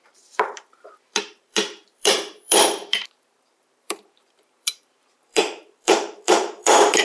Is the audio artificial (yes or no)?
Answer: yes